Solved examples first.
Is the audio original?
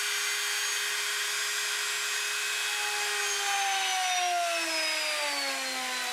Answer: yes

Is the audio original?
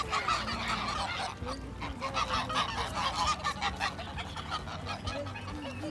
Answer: yes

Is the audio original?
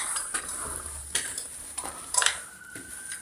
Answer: no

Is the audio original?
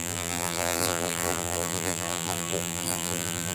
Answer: no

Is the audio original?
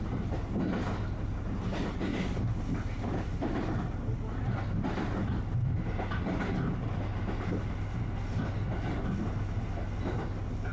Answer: yes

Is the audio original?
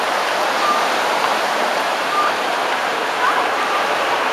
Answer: no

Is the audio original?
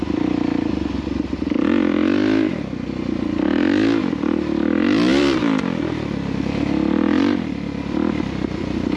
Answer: no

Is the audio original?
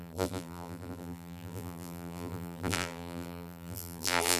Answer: no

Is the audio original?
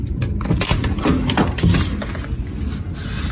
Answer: yes